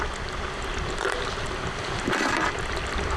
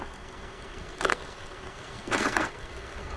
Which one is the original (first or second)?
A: first